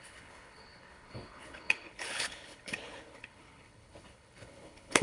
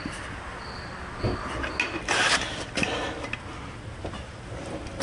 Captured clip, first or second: second